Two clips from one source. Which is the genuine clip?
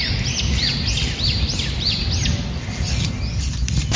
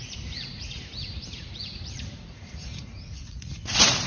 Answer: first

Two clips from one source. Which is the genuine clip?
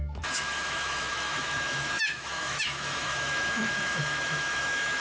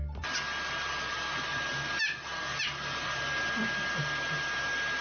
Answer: second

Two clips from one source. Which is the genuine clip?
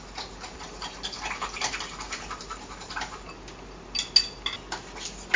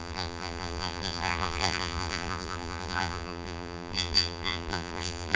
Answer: first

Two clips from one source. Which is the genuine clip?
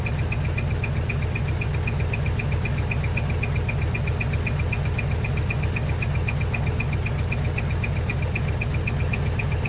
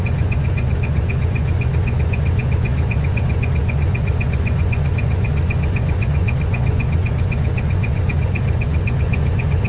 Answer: first